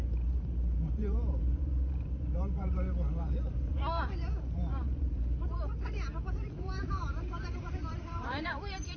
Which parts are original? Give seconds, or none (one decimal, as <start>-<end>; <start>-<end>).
5.7-6.3

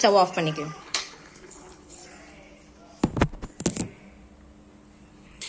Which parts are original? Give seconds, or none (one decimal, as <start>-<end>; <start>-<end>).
0.0-0.8; 2.0-5.1

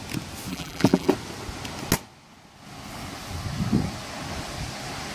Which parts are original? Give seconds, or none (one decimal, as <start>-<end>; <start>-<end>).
0.0-0.5; 1.1-5.1

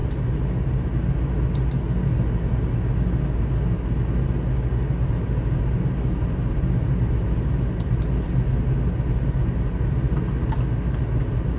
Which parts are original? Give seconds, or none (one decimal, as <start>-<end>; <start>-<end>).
0.0-11.6

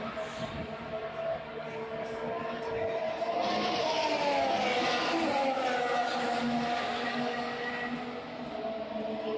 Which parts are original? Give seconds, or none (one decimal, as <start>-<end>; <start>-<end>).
0.0-1.1; 2.4-7.1; 7.7-9.4

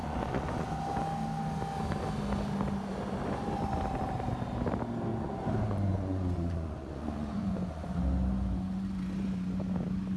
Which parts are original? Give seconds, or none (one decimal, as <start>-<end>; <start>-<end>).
0.7-5.1; 8.0-10.2

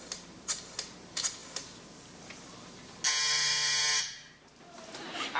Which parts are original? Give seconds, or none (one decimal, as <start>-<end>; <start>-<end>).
0.0-5.4